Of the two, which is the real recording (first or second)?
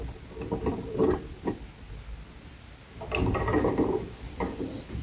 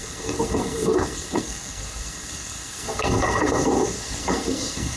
first